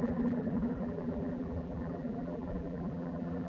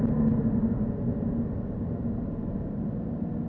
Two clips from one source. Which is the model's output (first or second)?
first